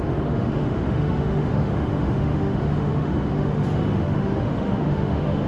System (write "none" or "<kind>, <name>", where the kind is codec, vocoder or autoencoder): autoencoder, DAC-VAE